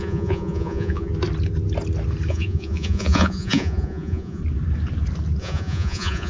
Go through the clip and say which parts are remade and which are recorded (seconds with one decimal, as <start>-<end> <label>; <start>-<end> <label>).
0.0-1.1 remade; 1.1-2.3 recorded; 2.3-4.4 remade; 4.4-5.4 recorded; 5.4-6.3 remade